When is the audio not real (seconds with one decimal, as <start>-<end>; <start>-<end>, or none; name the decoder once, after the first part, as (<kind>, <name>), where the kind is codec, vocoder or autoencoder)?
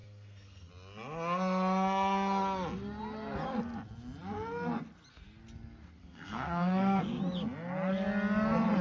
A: 0.0-0.7 (codec, SNAC); 6.0-7.0